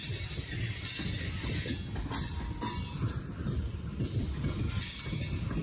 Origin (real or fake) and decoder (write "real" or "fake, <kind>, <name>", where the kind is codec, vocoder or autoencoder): real